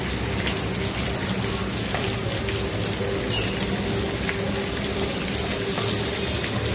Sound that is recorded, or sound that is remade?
recorded